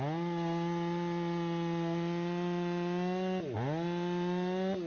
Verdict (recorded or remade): recorded